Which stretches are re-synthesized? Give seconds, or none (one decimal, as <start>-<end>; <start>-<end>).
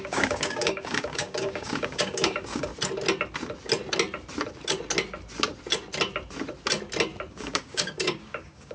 0.0-2.7; 7.3-8.7